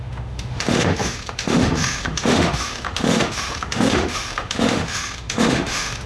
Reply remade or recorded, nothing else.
remade